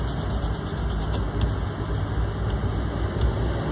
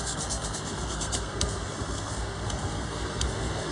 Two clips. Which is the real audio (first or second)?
first